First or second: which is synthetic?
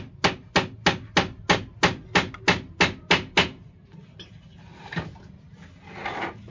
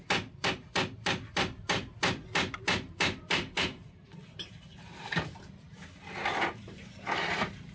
second